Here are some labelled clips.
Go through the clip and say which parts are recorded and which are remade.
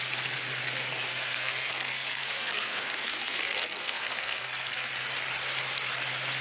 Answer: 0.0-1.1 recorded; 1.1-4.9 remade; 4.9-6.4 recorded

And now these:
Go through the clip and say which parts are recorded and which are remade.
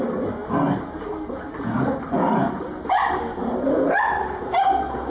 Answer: 0.0-5.1 recorded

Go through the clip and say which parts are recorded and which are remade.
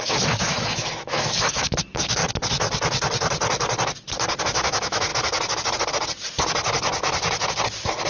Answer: 0.0-2.2 remade; 2.2-4.4 recorded; 4.4-5.1 remade; 5.1-8.1 recorded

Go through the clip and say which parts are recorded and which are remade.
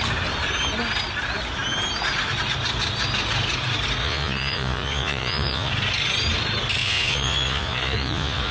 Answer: 0.0-4.0 recorded; 4.0-5.7 remade; 5.7-6.8 recorded; 6.8-8.5 remade